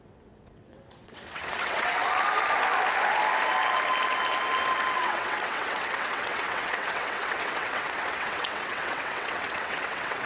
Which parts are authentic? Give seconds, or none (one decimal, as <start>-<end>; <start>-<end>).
2.0-4.9